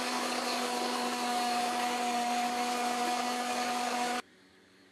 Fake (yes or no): yes